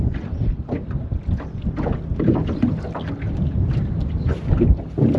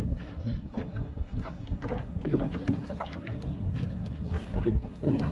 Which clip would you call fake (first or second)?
second